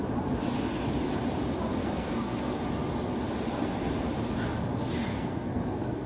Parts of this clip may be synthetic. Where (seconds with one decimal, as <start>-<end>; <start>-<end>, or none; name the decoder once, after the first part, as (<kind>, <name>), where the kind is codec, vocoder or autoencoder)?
1.8-2.6 (codec, SNAC); 3.5-4.1; 5.1-6.1